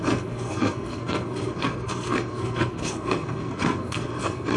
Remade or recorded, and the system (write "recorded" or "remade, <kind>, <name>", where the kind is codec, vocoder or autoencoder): remade, codec, SNAC